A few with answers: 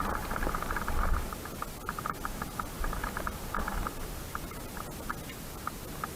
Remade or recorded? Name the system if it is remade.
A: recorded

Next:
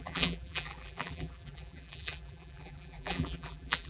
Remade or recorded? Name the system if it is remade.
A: remade, vocoder, BigVGAN v2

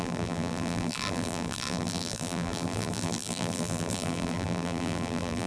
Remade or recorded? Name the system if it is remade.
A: remade, vocoder, BigVGAN v2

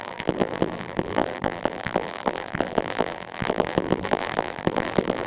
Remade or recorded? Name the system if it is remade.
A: remade, vocoder, BigVGAN v2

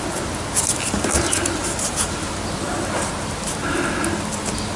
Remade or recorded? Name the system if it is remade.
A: recorded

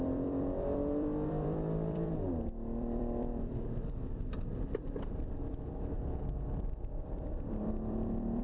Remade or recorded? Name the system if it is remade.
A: remade, vocoder, BigVGAN v2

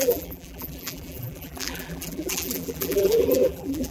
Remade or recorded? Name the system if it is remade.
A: remade, vocoder, BigVGAN v2